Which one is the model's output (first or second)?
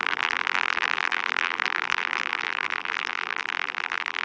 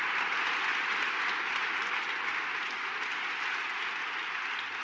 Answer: first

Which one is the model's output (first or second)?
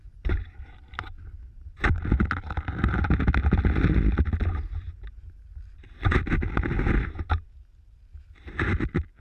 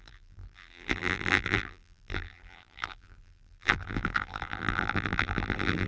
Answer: second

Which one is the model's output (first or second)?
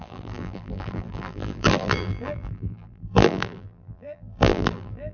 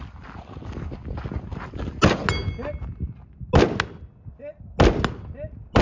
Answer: first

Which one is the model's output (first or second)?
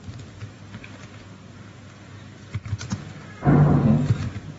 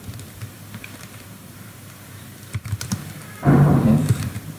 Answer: second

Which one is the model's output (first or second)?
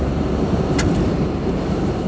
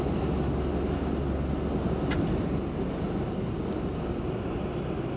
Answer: first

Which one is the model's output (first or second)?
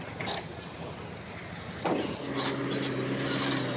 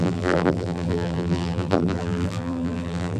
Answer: second